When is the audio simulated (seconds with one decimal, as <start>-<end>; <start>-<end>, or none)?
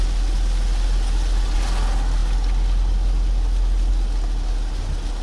none